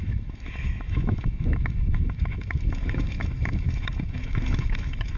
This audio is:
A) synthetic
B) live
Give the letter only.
A